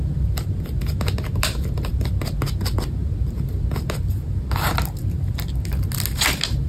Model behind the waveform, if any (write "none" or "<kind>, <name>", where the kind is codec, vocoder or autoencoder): none